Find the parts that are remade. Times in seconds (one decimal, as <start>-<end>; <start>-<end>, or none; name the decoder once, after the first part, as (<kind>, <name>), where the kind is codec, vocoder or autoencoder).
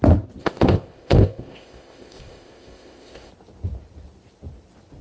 0.4-3.3 (codec, ZipCodec)